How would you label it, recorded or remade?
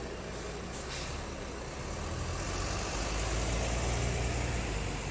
recorded